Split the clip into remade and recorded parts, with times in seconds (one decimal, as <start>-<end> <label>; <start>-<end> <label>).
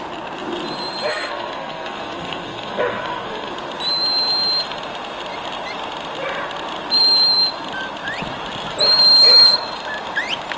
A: 0.0-1.1 recorded; 1.1-3.5 remade; 3.5-10.6 recorded